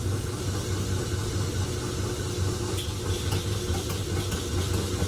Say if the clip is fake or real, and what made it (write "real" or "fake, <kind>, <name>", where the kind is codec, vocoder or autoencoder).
real